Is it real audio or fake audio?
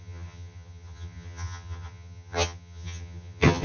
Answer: fake